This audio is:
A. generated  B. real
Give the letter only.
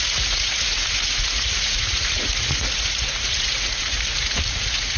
A